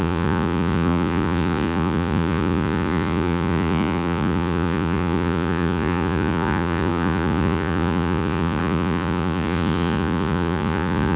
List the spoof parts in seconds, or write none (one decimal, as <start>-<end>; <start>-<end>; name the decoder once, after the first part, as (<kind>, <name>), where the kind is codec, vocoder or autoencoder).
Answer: 0.0-11.2 (vocoder, Vocos)